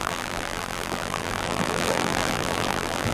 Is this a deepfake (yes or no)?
yes